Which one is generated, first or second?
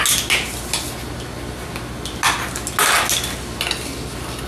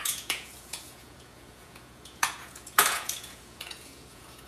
second